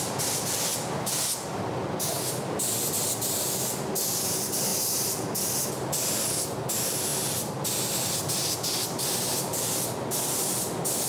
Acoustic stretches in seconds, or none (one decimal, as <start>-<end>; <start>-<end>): 0.0-11.1